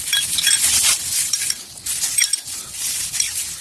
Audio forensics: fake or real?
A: real